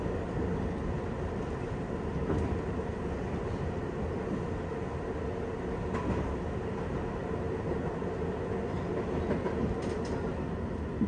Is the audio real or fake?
real